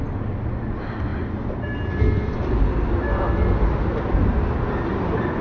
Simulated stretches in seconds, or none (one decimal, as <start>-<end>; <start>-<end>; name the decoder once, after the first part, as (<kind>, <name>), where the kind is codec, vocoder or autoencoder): none